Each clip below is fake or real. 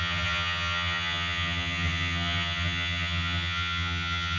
fake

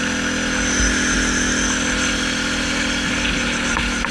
real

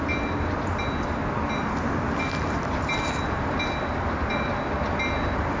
real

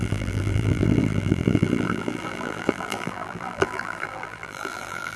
fake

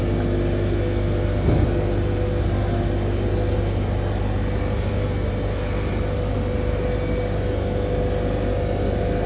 real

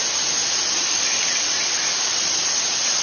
real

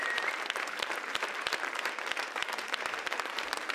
fake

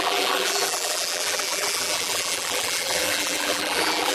fake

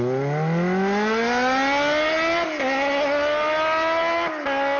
real